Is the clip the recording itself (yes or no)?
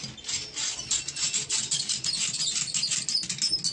yes